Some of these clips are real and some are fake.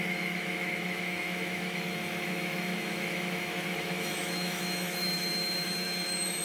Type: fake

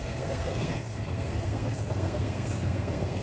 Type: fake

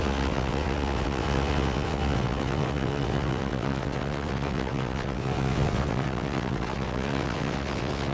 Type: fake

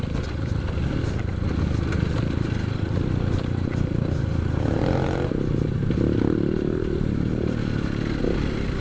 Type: real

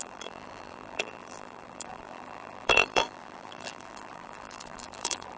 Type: fake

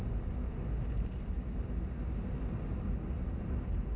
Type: real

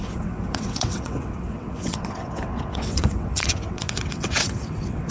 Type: fake